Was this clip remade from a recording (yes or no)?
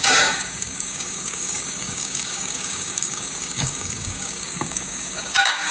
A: yes